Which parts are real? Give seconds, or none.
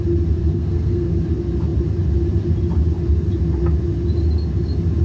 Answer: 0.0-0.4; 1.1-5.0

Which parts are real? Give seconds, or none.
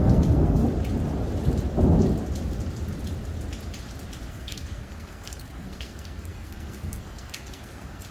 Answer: 0.6-4.3